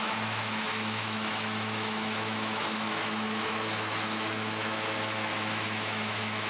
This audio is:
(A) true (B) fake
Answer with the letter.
B